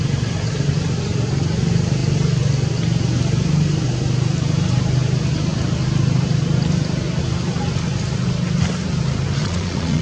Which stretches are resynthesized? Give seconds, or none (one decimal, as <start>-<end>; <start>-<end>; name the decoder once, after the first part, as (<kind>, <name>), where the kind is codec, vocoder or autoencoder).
9.4-10.0 (vocoder, Vocos)

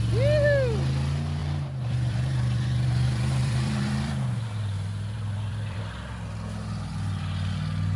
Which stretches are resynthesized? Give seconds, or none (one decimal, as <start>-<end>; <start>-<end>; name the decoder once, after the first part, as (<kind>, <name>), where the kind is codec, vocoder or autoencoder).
1.4-5.8 (vocoder, BigVGAN v2)

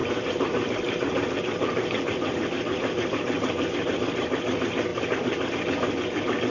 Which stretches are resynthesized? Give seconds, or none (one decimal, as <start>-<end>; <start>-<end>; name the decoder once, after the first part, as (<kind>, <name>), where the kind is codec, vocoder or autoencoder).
0.0-3.9 (vocoder, BigVGAN v2); 4.9-5.5

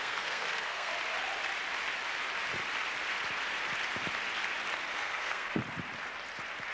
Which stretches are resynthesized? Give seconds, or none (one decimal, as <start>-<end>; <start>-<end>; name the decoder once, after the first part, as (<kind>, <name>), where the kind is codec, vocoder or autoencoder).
0.0-0.9 (codec, SNAC); 4.9-5.6